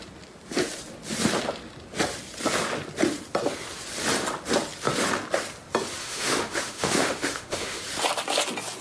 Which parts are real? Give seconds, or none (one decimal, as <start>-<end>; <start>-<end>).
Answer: 0.0-6.0; 7.8-8.8